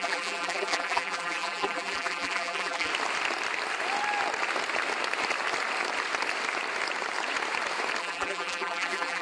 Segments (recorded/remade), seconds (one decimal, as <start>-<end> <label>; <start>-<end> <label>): 0.0-2.9 remade; 2.9-8.0 recorded; 8.0-9.2 remade